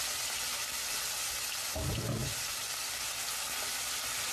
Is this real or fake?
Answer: real